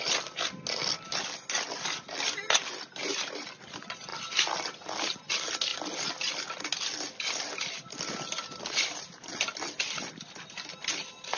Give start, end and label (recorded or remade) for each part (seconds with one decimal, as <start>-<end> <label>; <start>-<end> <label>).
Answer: 0.0-11.4 recorded